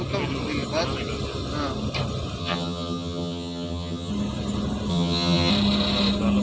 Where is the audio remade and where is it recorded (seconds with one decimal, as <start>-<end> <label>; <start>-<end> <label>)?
0.0-2.4 recorded; 2.4-4.1 remade; 4.1-4.9 recorded; 4.9-5.5 remade; 5.5-6.4 recorded